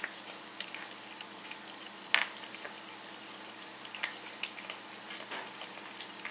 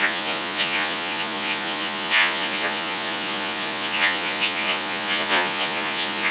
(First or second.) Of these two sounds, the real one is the first